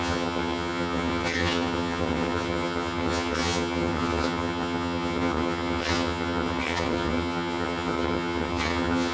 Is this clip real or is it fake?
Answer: fake